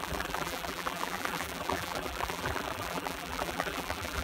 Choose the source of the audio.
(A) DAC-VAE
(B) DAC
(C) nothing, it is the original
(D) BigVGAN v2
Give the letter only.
D